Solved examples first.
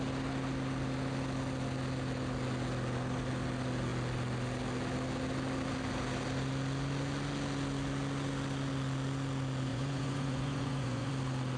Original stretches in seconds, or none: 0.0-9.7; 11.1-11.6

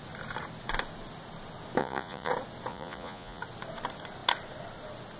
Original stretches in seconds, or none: 0.0-1.8; 2.3-2.7; 3.4-5.2